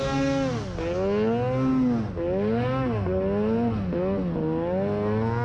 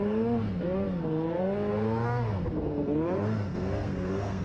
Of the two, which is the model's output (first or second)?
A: second